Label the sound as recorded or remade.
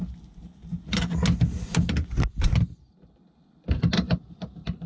recorded